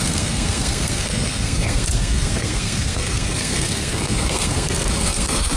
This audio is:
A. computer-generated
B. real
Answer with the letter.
A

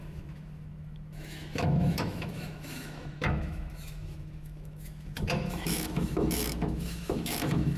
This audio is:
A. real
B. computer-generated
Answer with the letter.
B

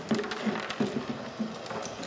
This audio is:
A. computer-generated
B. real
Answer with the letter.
B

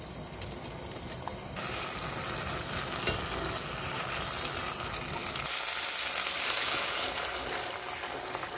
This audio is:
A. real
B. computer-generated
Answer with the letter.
A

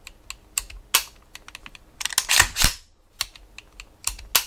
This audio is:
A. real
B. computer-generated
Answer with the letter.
A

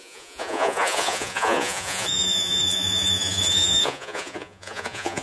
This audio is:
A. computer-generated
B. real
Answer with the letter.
A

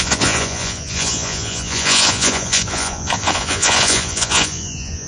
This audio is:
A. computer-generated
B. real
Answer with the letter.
A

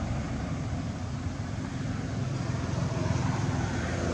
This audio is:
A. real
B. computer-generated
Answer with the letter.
A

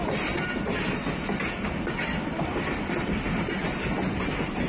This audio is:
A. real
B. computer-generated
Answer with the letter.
A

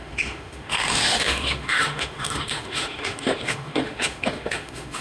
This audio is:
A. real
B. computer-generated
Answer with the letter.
B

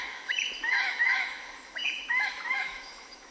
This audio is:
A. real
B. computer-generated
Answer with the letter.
B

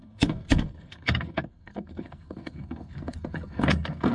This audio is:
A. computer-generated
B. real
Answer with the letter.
A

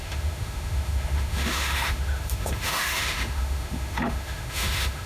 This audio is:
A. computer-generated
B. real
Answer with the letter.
A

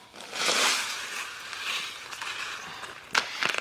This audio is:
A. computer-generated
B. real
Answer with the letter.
B